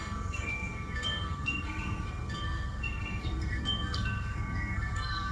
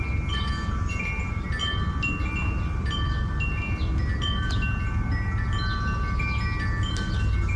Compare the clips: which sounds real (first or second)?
second